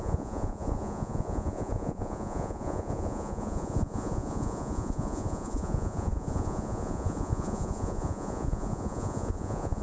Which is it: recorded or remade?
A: remade